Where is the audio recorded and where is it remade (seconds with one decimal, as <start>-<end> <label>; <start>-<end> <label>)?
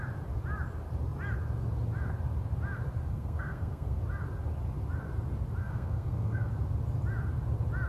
0.0-3.1 recorded; 3.1-4.0 remade; 4.0-5.6 recorded; 5.6-6.5 remade; 6.5-7.9 recorded